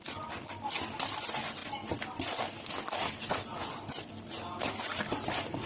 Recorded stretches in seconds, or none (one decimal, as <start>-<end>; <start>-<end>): 0.0-1.6; 2.6-4.9